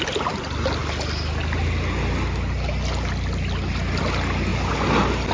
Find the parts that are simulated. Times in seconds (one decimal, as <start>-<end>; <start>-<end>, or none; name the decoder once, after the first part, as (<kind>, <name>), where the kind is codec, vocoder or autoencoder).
none